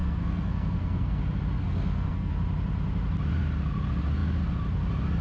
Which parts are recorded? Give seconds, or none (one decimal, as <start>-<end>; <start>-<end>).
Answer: 1.2-1.6; 2.3-5.2